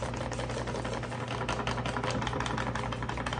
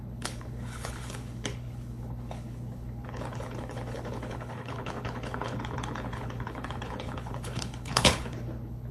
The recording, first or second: first